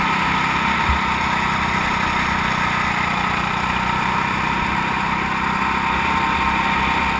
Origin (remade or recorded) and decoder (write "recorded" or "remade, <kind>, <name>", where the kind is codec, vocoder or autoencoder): recorded